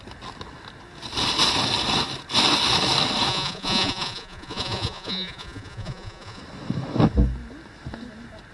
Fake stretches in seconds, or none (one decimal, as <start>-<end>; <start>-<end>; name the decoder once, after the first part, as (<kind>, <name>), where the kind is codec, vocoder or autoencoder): 3.3-6.4 (vocoder, Vocos)